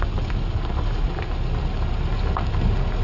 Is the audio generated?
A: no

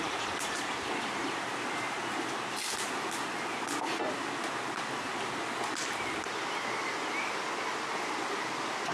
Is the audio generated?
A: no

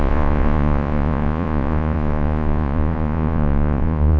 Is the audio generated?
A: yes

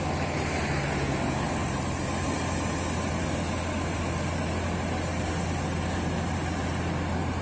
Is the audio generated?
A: no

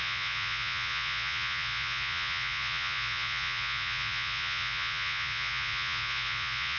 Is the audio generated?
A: yes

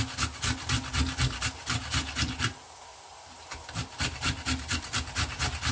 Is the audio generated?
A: no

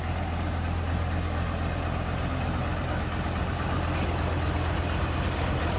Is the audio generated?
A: no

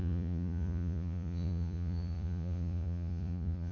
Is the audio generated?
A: yes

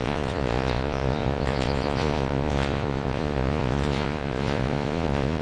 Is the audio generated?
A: yes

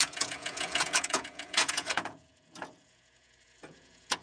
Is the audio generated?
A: yes